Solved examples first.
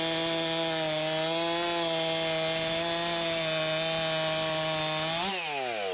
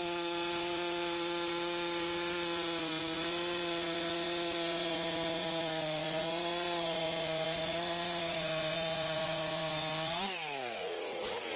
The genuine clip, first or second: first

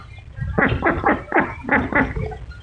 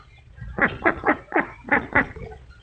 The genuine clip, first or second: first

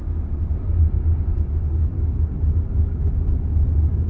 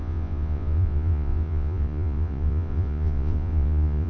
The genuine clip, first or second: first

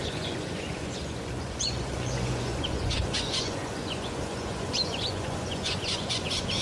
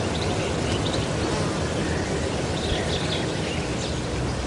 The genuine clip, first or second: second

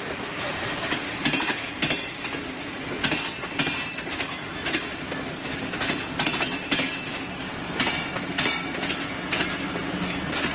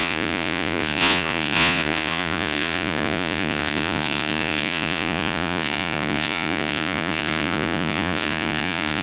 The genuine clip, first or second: first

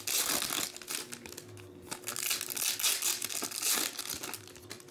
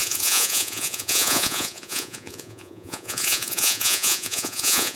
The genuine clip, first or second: first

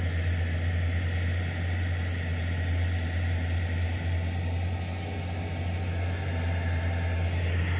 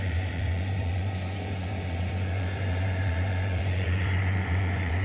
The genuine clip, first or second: first